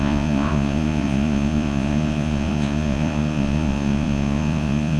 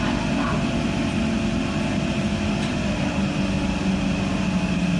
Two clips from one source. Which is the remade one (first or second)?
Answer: first